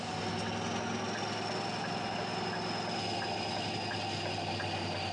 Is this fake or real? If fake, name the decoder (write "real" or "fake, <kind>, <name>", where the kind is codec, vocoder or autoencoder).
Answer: real